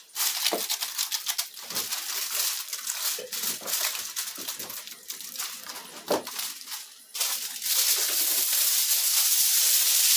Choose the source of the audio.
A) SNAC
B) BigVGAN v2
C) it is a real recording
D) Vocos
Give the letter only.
C